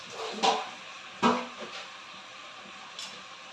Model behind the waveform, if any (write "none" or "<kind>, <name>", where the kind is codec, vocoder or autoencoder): none